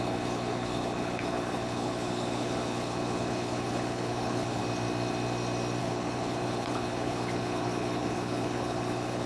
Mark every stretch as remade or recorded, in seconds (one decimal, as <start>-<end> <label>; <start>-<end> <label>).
0.0-4.6 remade; 4.6-5.8 recorded; 5.8-9.3 remade

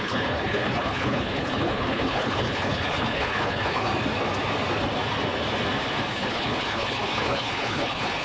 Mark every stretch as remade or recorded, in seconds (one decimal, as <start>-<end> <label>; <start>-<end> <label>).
0.0-3.9 remade; 3.9-6.1 recorded; 6.1-8.2 remade

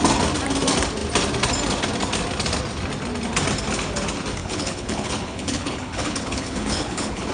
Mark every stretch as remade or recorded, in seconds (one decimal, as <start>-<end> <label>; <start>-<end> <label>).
0.0-4.4 recorded; 4.4-7.3 remade

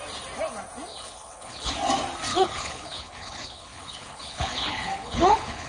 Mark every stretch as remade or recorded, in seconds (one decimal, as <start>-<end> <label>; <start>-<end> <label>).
0.0-0.9 recorded; 0.9-1.7 remade; 1.7-2.3 recorded; 2.3-5.7 remade

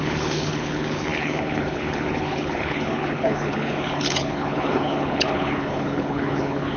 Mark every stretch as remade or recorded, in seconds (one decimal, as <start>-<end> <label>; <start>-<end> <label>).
0.0-6.8 remade

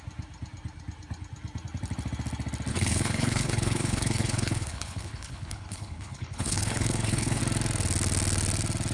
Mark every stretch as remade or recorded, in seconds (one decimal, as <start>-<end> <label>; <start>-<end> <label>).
0.0-2.7 recorded; 2.7-7.4 remade; 7.4-8.9 recorded